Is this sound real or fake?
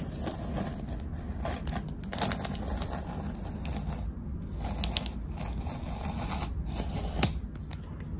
real